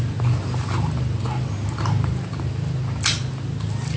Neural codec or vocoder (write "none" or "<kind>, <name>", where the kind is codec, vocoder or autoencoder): none